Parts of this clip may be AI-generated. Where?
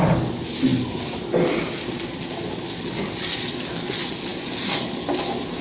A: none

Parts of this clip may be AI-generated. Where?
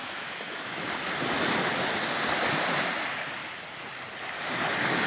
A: 0.0-0.9 (autoencoder, DAC-VAE)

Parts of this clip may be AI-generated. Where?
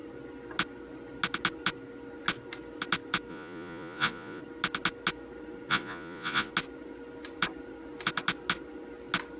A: 3.3-4.4 (vocoder, Vocos); 5.7-6.5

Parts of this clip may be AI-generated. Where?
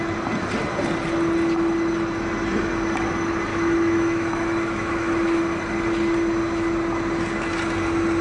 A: 3.5-5.4 (autoencoder, DAC-VAE)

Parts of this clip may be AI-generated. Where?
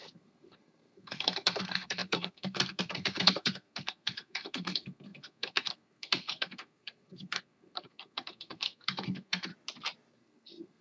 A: 0.0-9.5 (codec, SNAC); 10.1-10.8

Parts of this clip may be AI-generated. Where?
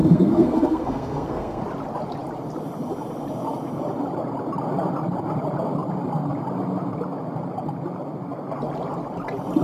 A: 0.0-1.6 (codec, SNAC)